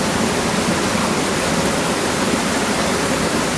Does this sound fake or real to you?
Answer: real